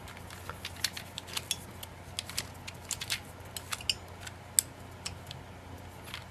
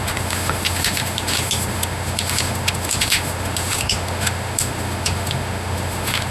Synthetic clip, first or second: second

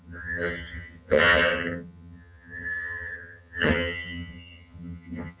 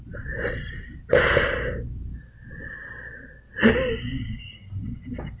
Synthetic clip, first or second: first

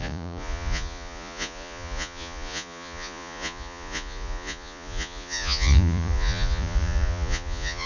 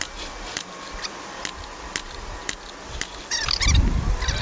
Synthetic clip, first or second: first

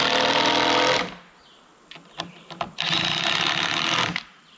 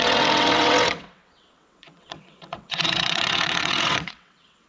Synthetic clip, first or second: second